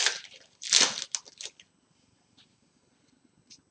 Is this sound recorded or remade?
recorded